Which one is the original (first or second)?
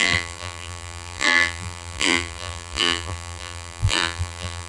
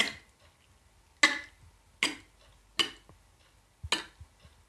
second